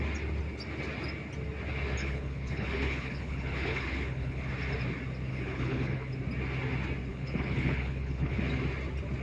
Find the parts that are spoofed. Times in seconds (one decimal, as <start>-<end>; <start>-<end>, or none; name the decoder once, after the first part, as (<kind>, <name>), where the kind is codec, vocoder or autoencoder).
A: 2.0-4.5 (codec, HILCodec); 5.3-6.1; 7.1-8.4